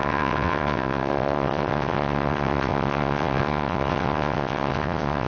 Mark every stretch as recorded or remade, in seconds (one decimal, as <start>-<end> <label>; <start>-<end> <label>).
0.0-5.3 remade